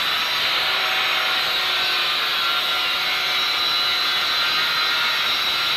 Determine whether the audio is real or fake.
real